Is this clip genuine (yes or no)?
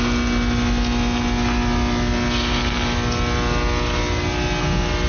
yes